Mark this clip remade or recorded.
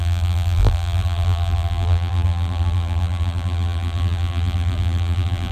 remade